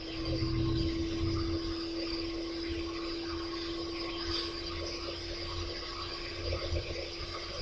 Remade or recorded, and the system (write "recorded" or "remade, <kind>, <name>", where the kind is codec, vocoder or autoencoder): recorded